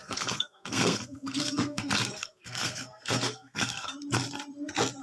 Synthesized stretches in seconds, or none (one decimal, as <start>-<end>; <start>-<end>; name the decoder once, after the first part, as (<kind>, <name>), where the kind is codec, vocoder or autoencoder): 0.0-3.9 (codec, SNAC)